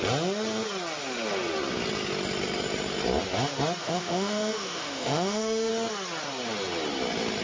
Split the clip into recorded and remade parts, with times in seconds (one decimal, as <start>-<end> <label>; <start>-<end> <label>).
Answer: 0.0-3.8 recorded; 3.8-5.7 remade; 5.7-7.4 recorded